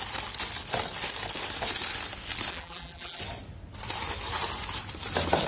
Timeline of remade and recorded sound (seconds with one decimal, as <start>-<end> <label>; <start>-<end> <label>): 0.0-2.5 recorded; 2.5-3.2 remade; 3.2-5.5 recorded